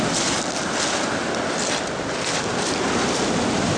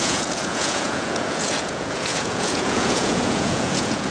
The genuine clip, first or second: first